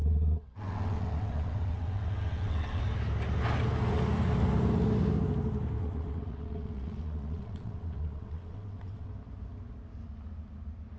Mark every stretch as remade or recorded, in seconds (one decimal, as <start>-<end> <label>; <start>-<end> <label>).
0.0-2.8 remade; 2.8-5.8 recorded; 5.8-9.1 remade; 9.1-11.0 recorded